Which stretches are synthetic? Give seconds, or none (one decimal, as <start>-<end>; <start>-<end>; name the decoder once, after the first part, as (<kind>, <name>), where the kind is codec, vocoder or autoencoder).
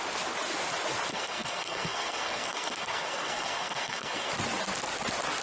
1.1-4.3 (codec, SNAC)